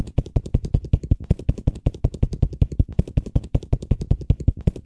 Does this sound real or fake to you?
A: real